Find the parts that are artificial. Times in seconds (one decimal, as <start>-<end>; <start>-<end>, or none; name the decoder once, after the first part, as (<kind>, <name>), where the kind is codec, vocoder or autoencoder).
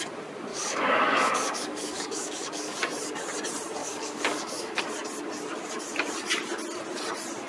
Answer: 0.5-2.8 (codec, DAC); 3.8-4.8